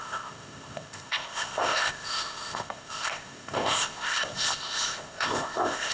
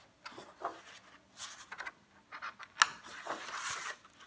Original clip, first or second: second